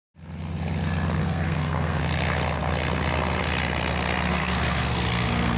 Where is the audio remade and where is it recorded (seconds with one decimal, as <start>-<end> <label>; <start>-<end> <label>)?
0.0-1.2 recorded; 1.2-2.0 remade; 2.0-4.3 recorded; 4.3-5.6 remade